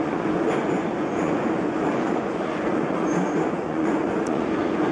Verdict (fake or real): fake